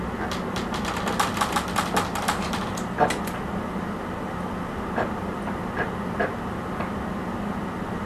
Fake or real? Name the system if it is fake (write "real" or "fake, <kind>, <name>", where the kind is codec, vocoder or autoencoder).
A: real